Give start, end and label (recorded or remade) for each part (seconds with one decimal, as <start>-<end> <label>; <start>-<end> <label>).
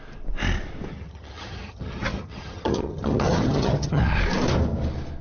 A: 0.0-0.9 recorded; 0.9-4.0 remade; 4.0-5.2 recorded